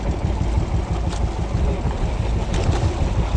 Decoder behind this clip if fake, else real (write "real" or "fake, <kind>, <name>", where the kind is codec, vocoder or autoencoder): real